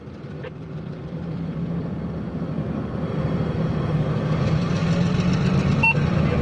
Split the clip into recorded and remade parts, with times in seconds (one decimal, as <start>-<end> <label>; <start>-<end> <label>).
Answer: 0.0-4.8 remade; 4.8-6.0 recorded; 6.0-6.4 remade